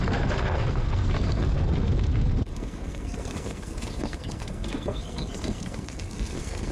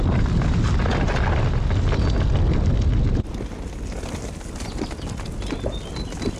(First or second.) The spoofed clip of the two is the first